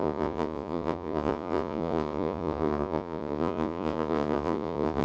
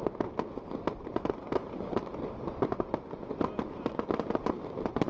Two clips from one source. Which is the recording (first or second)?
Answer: second